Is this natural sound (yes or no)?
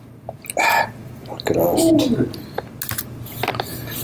yes